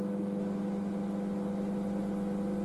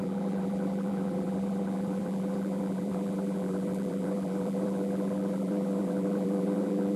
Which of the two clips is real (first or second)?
first